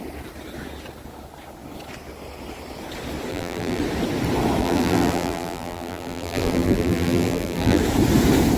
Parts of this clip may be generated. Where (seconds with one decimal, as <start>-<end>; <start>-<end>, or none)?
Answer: 3.3-3.8; 4.6-7.8